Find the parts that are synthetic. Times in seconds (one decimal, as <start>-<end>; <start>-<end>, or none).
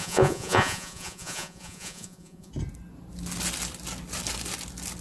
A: 0.0-2.5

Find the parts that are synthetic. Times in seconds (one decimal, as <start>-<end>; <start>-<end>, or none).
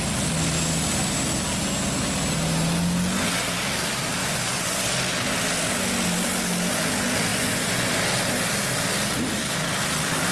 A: 4.2-4.8; 7.3-7.9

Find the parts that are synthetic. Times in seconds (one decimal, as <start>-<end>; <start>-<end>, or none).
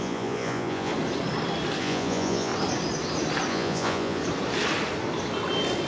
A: 0.0-0.9; 1.8-2.5; 3.5-4.2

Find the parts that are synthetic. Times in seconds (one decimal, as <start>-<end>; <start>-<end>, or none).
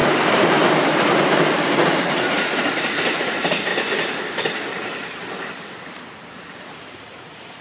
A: 2.0-3.7; 6.6-7.6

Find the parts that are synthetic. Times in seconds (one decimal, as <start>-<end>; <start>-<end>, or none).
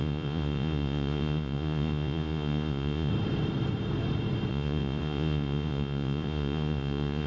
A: 0.0-3.1; 4.5-7.3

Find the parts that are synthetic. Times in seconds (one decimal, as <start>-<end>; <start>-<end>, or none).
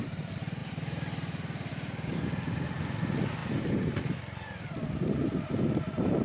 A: none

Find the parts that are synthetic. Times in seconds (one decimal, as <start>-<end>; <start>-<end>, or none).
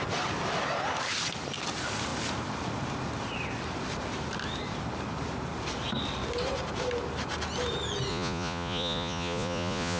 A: 8.1-10.0